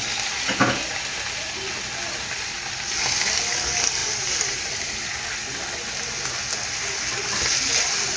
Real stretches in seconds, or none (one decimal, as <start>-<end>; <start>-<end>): 0.0-4.0; 4.9-8.2